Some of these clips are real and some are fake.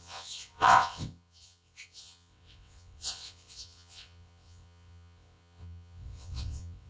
fake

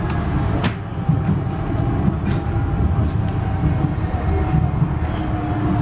real